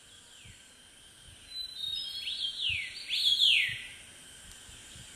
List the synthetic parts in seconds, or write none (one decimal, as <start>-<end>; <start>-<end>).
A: none